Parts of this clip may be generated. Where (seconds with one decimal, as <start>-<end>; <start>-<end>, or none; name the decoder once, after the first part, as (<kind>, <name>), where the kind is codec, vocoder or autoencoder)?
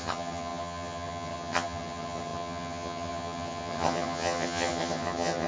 0.0-5.5 (vocoder, HiFi-GAN)